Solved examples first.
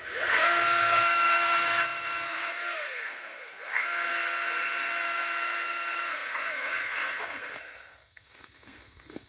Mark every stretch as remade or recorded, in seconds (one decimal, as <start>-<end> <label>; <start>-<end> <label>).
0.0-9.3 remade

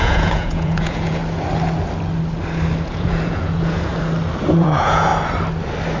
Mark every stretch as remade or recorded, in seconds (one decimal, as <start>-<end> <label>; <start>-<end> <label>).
0.0-1.2 remade; 1.2-2.9 recorded; 2.9-3.9 remade; 3.9-4.6 recorded; 4.6-5.1 remade; 5.1-6.0 recorded

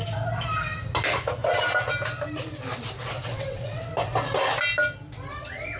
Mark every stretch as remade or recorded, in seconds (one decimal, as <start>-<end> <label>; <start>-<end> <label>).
0.0-3.3 recorded; 3.3-3.9 remade; 3.9-5.8 recorded